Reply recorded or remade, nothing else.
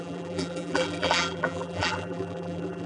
remade